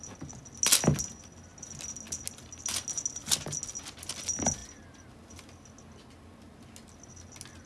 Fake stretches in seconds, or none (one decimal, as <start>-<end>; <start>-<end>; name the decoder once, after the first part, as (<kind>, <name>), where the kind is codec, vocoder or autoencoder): none